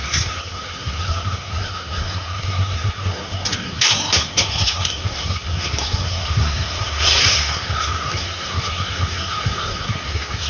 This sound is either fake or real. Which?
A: fake